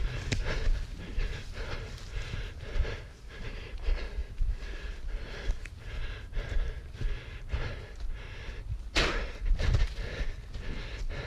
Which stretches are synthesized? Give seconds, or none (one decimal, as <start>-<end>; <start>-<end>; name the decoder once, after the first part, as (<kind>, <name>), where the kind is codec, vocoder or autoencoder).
1.1-3.8 (vocoder, BigVGAN v2)